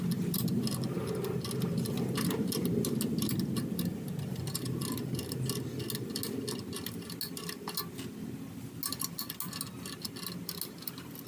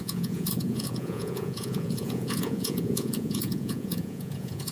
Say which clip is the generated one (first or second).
second